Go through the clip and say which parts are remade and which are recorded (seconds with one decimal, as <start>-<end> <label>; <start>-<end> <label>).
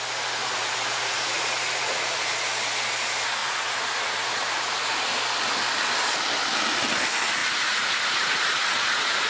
0.0-0.4 recorded; 0.4-2.5 remade; 2.5-3.4 recorded; 3.4-5.1 remade; 5.1-7.4 recorded; 7.4-9.3 remade